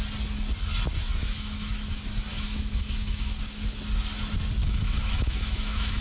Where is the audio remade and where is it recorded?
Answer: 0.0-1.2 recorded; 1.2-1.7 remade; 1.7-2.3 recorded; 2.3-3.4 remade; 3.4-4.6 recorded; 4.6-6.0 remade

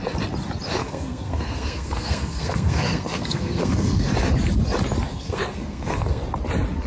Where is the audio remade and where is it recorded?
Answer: 0.0-0.8 recorded; 0.8-4.1 remade; 4.1-5.1 recorded; 5.1-6.2 remade; 6.2-6.9 recorded

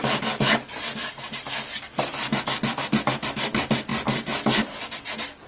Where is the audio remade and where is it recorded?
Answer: 0.0-5.5 recorded

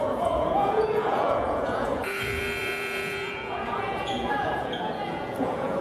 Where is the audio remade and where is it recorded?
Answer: 0.0-5.8 remade

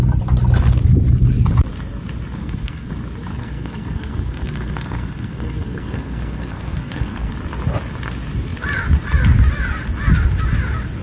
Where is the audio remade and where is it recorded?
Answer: 0.0-2.4 recorded; 2.4-2.9 remade; 2.9-3.3 recorded; 3.3-7.3 remade; 7.3-11.0 recorded